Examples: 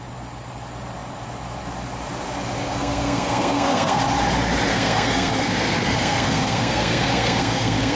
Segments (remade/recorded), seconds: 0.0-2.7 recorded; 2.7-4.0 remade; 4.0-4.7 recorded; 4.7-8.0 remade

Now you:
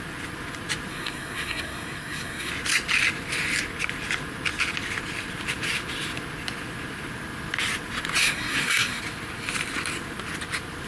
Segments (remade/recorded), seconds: 0.0-0.9 recorded; 0.9-2.5 remade; 2.5-8.2 recorded; 8.2-9.0 remade; 9.0-10.9 recorded

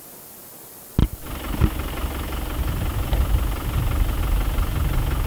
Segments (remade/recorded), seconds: 0.0-5.3 recorded

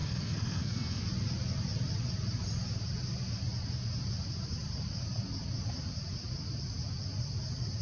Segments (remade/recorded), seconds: 0.0-1.0 remade; 1.0-7.8 recorded